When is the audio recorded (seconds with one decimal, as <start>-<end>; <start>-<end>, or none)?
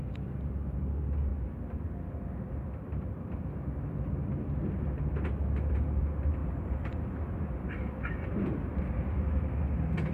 0.0-6.4; 8.8-10.1